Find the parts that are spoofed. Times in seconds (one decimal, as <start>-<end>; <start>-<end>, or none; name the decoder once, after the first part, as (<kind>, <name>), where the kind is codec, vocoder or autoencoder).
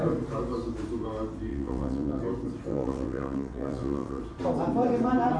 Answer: 1.5-2.2 (vocoder, WaveNeXt); 2.7-4.2